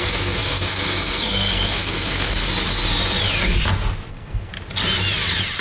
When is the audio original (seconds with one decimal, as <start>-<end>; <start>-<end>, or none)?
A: 2.4-4.1; 4.5-5.6

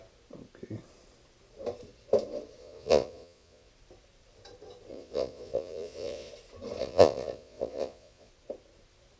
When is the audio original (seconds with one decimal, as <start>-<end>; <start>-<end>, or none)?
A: 0.0-2.6; 3.7-4.9; 6.3-6.8; 8.3-9.2

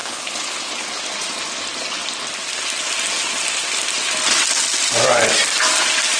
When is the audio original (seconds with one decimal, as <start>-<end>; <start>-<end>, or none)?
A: 1.0-6.2

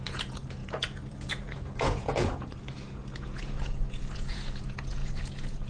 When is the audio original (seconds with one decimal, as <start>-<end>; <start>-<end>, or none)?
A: none

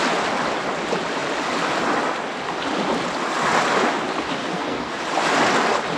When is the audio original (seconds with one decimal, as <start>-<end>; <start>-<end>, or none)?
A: 0.0-4.4; 5.0-6.0

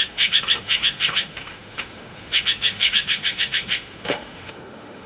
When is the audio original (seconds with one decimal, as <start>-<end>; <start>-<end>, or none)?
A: none

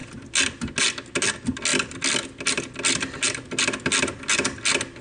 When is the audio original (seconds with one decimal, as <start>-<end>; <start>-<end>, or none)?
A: 0.0-5.0

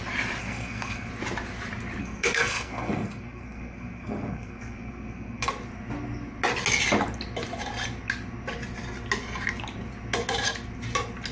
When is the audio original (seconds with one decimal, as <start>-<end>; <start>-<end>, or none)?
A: 0.0-0.4; 1.1-2.0; 5.5-11.3